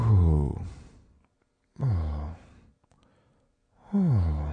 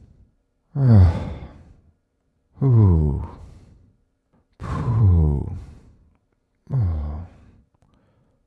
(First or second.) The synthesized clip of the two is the second